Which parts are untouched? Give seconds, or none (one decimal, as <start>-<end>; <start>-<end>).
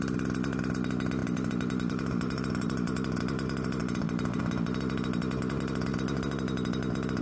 0.0-1.2; 3.2-3.8; 4.4-7.2